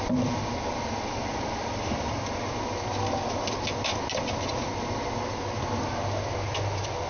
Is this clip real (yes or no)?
yes